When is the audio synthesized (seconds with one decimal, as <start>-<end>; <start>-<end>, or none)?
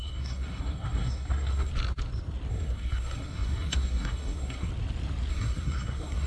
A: 0.0-1.7; 2.5-4.7; 5.3-6.3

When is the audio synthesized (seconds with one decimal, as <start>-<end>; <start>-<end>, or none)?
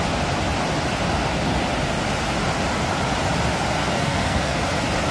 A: 3.8-4.6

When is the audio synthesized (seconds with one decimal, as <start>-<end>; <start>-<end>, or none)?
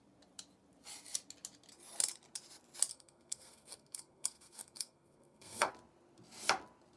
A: 2.9-5.7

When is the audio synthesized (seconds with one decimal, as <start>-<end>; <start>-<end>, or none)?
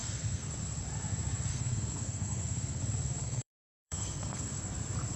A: 0.0-0.5; 1.5-2.8; 3.2-4.5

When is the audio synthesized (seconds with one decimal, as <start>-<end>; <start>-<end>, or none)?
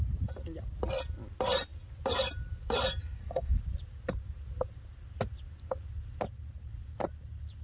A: 3.0-3.6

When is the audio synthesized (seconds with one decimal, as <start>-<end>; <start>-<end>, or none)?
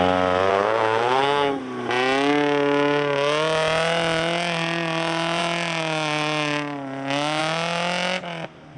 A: 0.5-1.6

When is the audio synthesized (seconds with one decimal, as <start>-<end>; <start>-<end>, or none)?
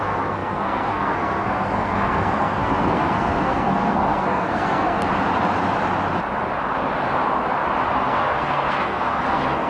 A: 0.0-5.1; 8.0-9.7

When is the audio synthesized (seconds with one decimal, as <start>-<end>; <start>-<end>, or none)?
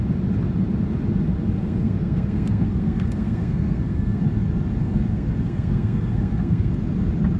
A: 1.6-4.2; 4.8-6.7